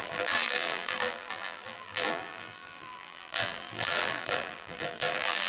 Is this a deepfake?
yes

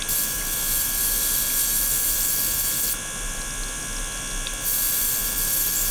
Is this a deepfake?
no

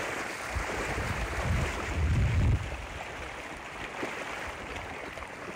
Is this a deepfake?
no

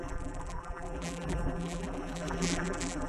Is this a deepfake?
yes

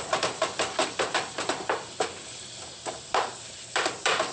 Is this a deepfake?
yes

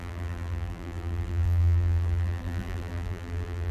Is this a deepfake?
yes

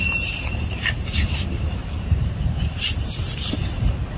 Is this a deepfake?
yes